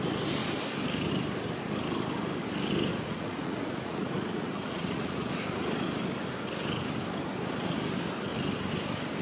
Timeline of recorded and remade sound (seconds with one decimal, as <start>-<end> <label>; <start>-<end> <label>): 0.0-2.9 recorded; 2.9-5.4 remade; 5.4-9.2 recorded

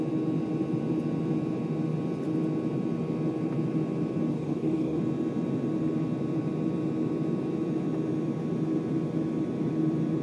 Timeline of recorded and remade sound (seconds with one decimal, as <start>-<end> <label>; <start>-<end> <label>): 0.0-4.3 recorded; 4.3-5.0 remade; 5.0-10.2 recorded

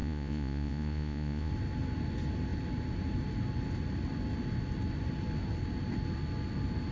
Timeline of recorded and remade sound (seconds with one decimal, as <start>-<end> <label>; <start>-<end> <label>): 0.0-1.5 remade; 1.5-6.9 recorded

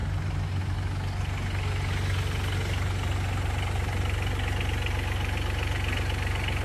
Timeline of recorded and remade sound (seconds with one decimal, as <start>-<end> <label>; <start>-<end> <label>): 0.0-6.6 recorded

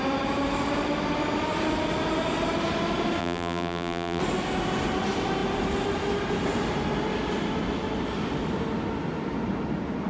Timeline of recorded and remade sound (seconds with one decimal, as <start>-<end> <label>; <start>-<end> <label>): 0.0-3.2 recorded; 3.2-4.2 remade; 4.2-10.1 recorded